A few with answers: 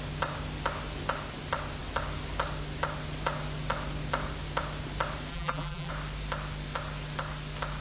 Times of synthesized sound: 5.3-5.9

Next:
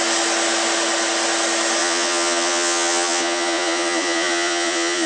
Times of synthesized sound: 1.8-5.1

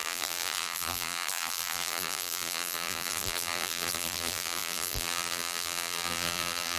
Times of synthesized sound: 0.0-6.8

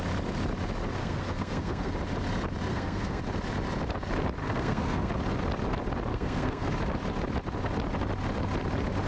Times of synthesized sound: 1.0-1.9; 2.7-3.2; 4.4-5.1; 6.1-6.7

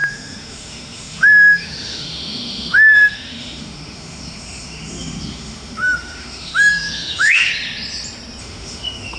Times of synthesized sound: 0.0-7.5; 8.4-9.2